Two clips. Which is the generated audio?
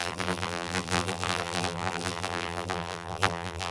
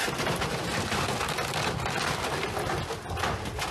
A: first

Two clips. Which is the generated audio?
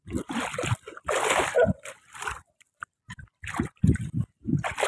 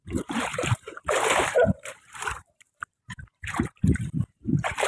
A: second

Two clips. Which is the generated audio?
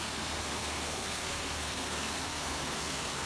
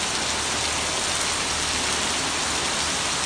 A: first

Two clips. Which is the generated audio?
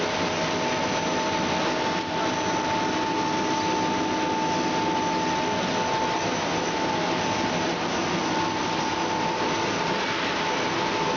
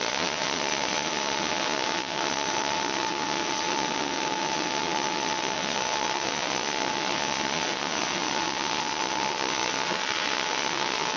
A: second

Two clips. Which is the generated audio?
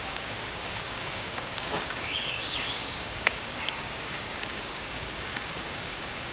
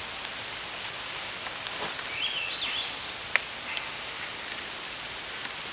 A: first